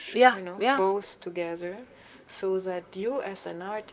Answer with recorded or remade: remade